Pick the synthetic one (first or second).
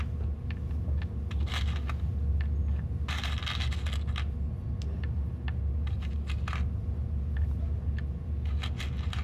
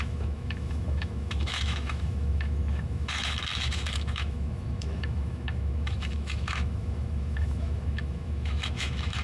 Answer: second